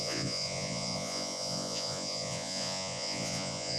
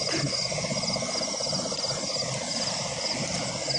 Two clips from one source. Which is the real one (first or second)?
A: second